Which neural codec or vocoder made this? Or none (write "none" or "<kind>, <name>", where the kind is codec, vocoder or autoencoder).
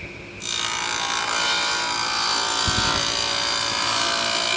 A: none